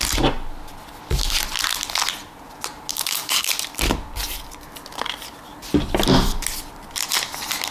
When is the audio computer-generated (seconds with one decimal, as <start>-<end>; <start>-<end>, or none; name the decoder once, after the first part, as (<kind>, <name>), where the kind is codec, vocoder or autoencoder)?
2.9-3.5 (codec, DAC)